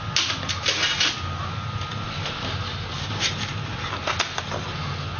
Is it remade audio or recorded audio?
recorded